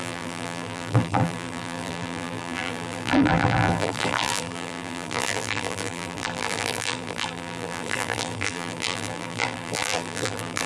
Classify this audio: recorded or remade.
remade